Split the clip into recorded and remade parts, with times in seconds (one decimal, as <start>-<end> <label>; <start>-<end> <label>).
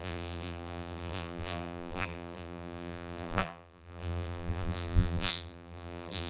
0.0-6.3 remade